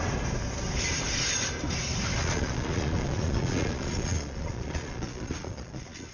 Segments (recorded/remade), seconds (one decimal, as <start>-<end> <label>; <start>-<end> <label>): 0.0-2.2 recorded; 2.2-6.1 remade